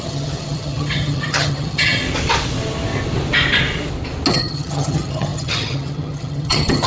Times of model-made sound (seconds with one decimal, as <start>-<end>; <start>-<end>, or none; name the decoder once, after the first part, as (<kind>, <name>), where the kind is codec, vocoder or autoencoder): 0.0-2.0 (vocoder, HiFi-GAN); 4.3-6.9